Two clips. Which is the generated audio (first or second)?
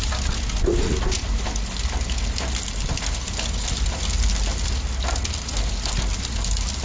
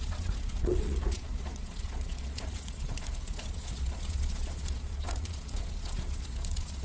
second